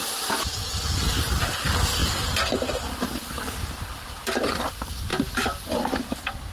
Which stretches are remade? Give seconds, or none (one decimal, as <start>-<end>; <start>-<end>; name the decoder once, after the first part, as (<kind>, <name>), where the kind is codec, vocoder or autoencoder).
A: 2.0-2.7 (vocoder, BigVGAN v2); 5.1-6.0